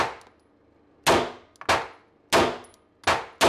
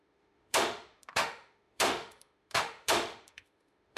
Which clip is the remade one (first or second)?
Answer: second